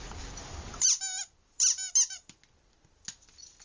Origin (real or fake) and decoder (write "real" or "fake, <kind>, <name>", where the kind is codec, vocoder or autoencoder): real